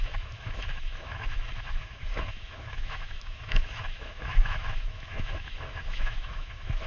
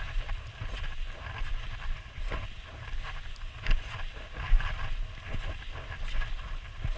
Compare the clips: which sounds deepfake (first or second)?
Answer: first